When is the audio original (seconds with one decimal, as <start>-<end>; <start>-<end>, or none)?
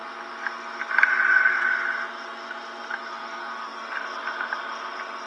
0.0-3.7; 4.2-5.3